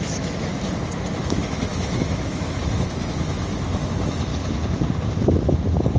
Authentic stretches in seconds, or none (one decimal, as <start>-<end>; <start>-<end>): 0.5-1.2; 4.3-6.0